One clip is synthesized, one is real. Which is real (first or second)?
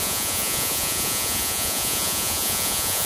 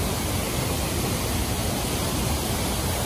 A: second